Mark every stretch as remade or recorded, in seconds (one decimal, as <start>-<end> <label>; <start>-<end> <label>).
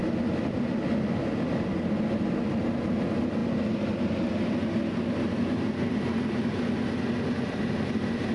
0.0-8.3 recorded